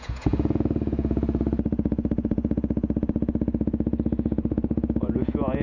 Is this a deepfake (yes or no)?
yes